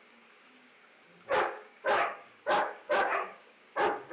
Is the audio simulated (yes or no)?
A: yes